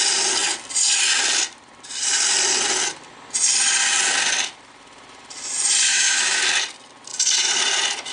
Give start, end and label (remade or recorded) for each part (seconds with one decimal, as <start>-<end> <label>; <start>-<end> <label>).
0.0-5.9 recorded; 5.9-6.4 remade; 6.4-8.1 recorded